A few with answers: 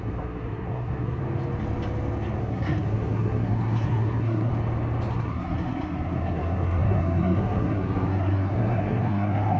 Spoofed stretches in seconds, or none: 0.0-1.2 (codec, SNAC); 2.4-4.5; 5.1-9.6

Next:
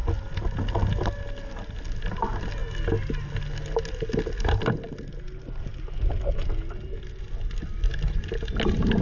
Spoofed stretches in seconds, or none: none

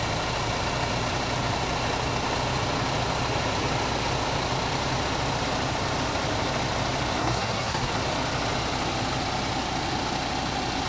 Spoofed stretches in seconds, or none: 7.2-7.9 (codec, SNAC)

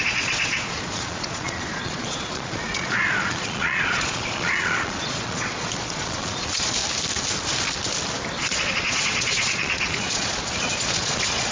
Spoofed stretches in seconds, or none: 0.0-6.8 (vocoder, Vocos); 8.4-11.5

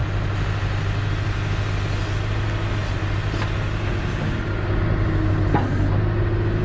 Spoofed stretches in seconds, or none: none